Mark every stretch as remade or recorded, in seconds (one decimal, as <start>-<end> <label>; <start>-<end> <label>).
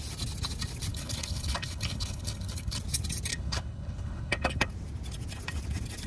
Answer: 0.0-0.9 recorded; 0.9-2.8 remade; 2.8-3.3 recorded; 3.3-4.7 remade; 4.7-6.1 recorded